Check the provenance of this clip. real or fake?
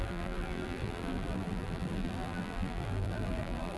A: fake